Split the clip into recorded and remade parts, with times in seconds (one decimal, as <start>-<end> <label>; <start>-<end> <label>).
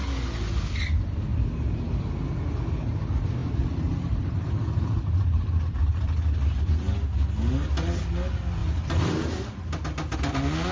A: 0.0-3.4 recorded; 3.4-6.7 remade; 6.7-8.6 recorded; 8.6-9.6 remade; 9.6-10.7 recorded